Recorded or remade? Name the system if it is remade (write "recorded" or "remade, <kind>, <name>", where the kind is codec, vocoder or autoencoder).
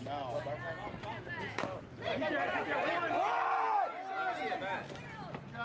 recorded